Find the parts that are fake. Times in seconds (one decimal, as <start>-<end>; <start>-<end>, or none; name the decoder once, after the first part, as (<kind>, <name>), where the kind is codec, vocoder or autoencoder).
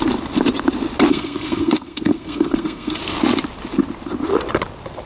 1.1-3.0 (codec, SNAC)